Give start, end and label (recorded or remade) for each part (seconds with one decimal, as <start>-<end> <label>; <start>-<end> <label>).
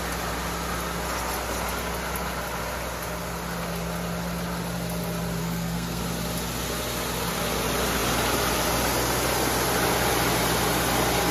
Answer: 0.0-5.4 recorded; 5.4-6.0 remade; 6.0-11.3 recorded